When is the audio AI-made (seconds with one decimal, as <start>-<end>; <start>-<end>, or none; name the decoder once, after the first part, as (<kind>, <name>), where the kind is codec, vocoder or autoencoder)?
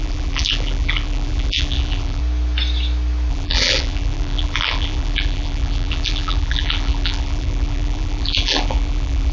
0.0-2.2 (vocoder, BigVGAN v2); 3.3-9.3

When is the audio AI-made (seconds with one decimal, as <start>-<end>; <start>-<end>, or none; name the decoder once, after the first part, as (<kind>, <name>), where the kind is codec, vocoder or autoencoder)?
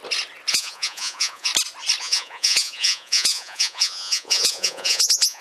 0.5-1.5 (vocoder, Vocos); 2.0-5.4